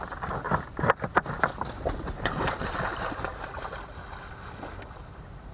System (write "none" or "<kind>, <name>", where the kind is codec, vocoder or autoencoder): none